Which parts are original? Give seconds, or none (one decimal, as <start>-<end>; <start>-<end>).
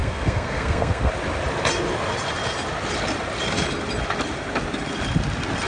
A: 1.1-5.7